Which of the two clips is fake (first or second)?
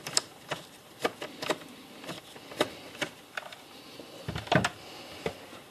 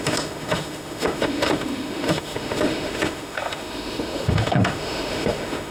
second